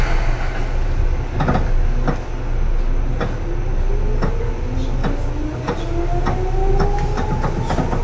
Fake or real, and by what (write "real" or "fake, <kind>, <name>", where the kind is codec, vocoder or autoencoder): real